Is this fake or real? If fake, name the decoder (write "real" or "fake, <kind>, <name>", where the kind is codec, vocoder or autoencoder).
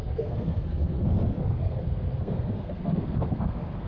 fake, codec, SNAC